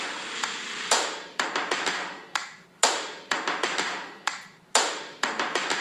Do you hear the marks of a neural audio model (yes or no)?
yes